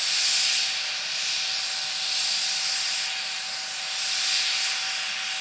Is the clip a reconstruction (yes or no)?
no